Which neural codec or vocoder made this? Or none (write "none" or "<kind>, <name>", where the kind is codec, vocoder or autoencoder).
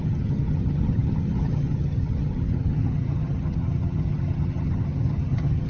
vocoder, HiFi-GAN